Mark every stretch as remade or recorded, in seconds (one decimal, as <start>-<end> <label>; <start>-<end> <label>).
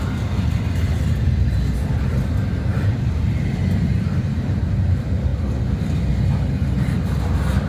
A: 0.0-2.7 recorded; 2.7-4.6 remade; 4.6-7.7 recorded